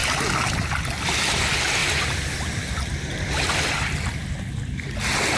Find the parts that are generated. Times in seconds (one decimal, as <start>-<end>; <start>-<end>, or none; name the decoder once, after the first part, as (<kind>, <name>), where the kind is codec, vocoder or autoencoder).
none